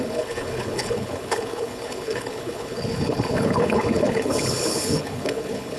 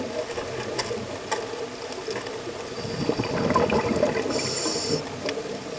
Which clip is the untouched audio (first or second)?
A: second